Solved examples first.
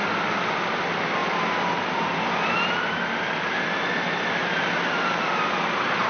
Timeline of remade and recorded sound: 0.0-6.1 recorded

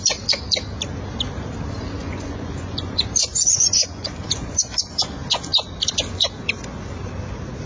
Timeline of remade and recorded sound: 0.0-2.0 recorded; 2.0-5.0 remade; 5.0-7.7 recorded

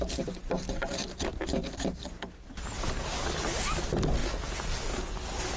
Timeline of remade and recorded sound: 0.0-4.2 recorded; 4.2-5.1 remade; 5.1-5.6 recorded

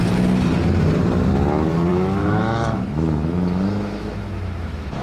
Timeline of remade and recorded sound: 0.0-1.9 recorded; 1.9-5.0 remade